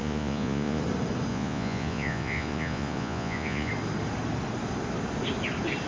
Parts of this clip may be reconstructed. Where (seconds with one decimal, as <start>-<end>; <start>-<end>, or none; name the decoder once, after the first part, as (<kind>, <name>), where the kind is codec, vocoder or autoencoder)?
0.0-0.8 (vocoder, Vocos); 1.3-3.7

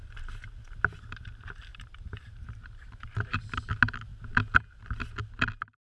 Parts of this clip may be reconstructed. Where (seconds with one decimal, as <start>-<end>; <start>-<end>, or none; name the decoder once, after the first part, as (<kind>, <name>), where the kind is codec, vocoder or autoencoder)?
1.7-3.4 (vocoder, BigVGAN v2)

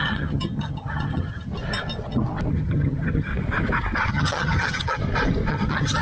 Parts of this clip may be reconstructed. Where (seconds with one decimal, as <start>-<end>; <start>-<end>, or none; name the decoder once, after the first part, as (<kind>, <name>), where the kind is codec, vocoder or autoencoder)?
0.0-1.5 (vocoder, HiFi-GAN); 2.5-3.3; 4.1-5.0; 5.5-6.0